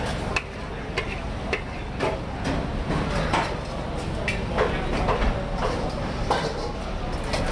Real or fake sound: real